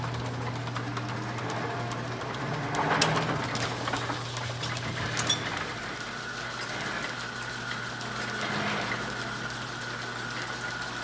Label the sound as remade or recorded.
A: recorded